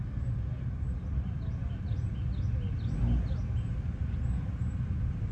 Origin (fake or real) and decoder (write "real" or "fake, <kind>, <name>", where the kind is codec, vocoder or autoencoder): real